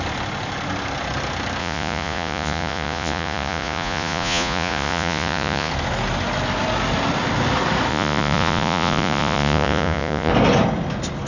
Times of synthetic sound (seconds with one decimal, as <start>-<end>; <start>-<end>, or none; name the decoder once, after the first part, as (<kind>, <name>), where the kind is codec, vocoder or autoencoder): 1.6-5.7 (vocoder, Vocos); 7.9-10.3